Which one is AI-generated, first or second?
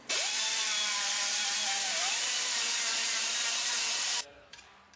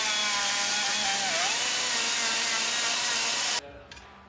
first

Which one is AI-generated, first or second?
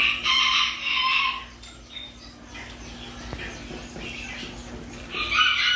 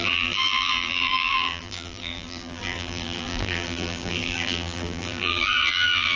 second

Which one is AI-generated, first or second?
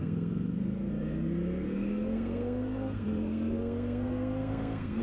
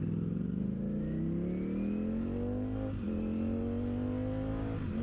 first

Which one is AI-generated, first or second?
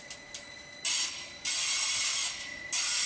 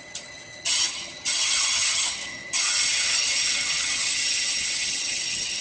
second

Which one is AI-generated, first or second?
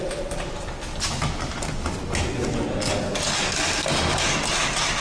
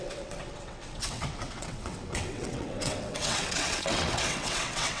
second